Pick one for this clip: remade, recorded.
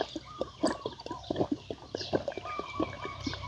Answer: recorded